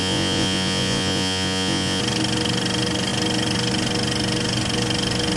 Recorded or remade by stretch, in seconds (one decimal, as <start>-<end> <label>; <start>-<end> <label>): 0.0-2.0 remade; 2.0-5.4 recorded